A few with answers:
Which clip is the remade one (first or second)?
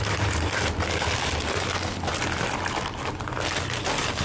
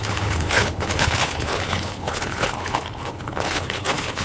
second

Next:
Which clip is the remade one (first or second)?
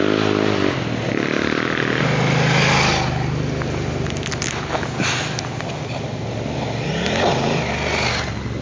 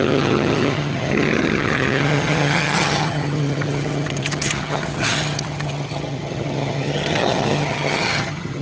second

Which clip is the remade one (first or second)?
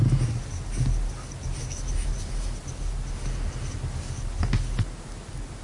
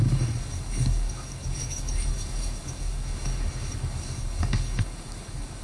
second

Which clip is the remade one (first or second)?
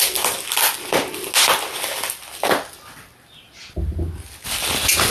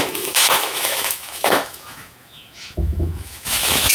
second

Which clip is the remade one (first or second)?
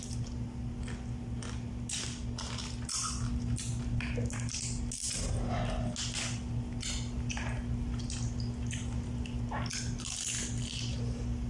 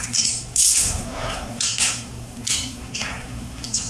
second